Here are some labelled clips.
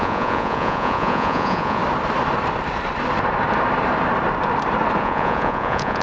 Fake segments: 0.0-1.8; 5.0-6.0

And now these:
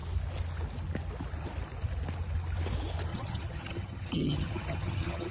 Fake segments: 3.1-5.3

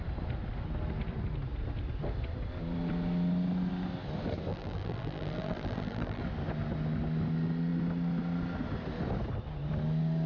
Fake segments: 4.5-6.2

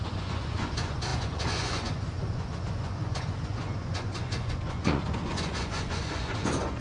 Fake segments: 0.0-6.8

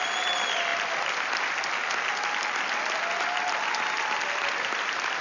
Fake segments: none